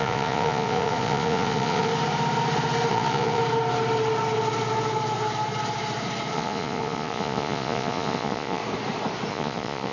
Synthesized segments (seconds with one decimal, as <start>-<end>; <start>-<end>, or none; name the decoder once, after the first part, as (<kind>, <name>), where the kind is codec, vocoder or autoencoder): 0.0-1.9 (vocoder, Vocos); 2.9-3.4; 6.3-8.6; 9.3-9.9